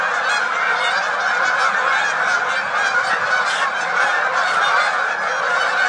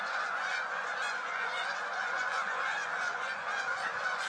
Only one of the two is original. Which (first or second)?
first